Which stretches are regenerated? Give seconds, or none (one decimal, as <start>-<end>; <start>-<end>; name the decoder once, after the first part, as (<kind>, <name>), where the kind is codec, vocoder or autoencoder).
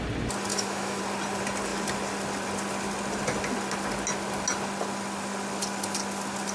0.5-1.0 (autoencoder, DAC-VAE)